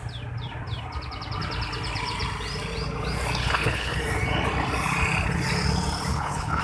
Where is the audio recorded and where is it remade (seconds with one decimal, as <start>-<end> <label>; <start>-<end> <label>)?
0.0-3.4 recorded; 3.4-4.0 remade; 4.0-6.1 recorded; 6.1-6.6 remade